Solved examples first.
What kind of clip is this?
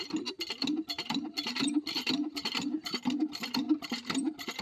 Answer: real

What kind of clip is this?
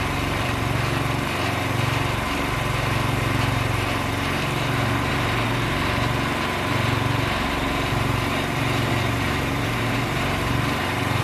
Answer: fake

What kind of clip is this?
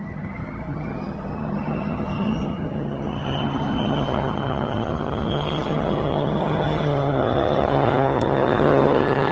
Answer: fake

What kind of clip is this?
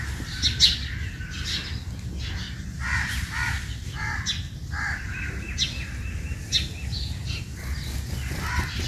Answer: real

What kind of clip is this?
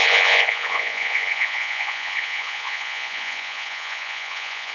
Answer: fake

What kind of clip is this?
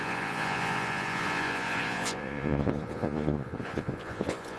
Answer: fake